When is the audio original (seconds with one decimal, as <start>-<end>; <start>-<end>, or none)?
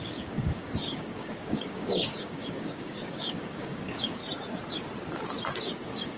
4.2-5.6